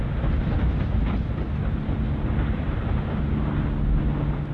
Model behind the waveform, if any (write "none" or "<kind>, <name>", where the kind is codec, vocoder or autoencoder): none